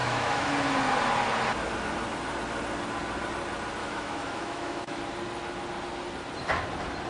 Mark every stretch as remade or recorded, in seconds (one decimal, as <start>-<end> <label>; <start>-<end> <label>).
0.0-0.5 remade; 0.5-3.8 recorded; 3.8-5.0 remade; 5.0-7.1 recorded